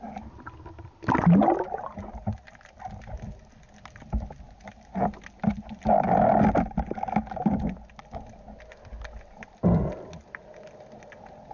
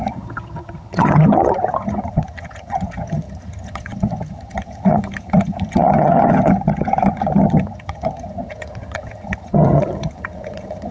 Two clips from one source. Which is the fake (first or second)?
second